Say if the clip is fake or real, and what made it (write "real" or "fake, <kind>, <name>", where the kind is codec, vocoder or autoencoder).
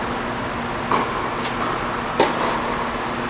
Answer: real